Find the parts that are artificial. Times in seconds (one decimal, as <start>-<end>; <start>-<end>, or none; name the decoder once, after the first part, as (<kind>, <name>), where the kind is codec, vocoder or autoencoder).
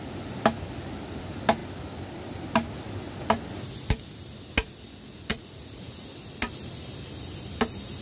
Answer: 5.3-6.1 (vocoder, Vocos)